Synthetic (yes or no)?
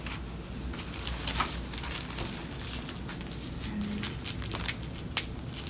no